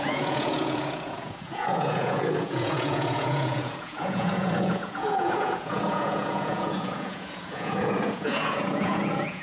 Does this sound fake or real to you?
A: fake